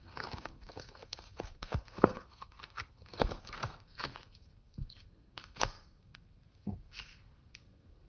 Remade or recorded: remade